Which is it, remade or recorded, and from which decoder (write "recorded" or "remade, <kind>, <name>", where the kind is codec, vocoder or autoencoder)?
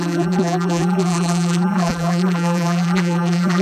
remade, vocoder, BigVGAN v2